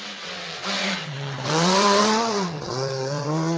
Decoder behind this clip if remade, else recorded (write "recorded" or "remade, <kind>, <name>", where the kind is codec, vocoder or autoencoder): remade, vocoder, WaveNeXt